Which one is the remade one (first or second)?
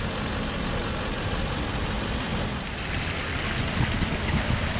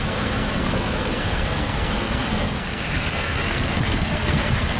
second